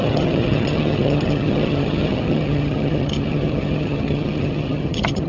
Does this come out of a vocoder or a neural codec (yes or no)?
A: yes